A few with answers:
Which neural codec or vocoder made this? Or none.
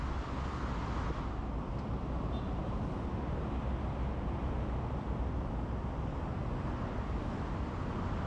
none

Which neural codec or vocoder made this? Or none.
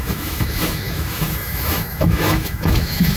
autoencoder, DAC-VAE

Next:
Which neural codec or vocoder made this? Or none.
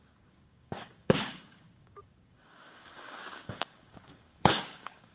codec, DAC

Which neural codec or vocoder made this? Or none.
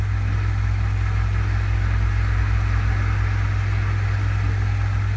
none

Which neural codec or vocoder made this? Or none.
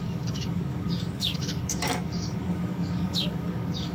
codec, DAC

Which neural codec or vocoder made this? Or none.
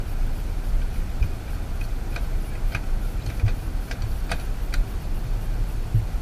none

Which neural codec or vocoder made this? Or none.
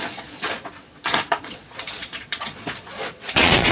vocoder, Vocos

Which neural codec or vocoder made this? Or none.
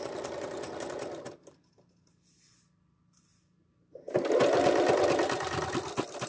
none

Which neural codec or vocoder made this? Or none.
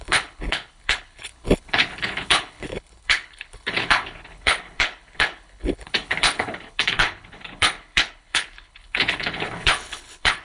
codec, HILCodec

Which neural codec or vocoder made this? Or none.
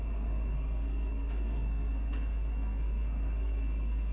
codec, SNAC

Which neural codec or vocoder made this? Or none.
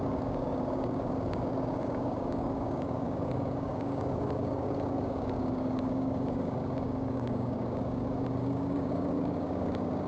codec, DAC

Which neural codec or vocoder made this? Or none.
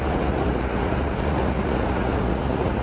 vocoder, Vocos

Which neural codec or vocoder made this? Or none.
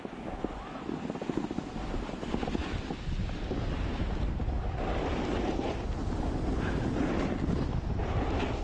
none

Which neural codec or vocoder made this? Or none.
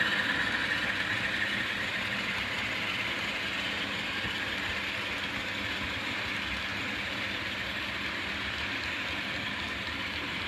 none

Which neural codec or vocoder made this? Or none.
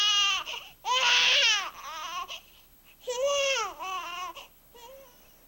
none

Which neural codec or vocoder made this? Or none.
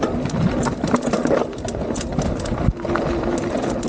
none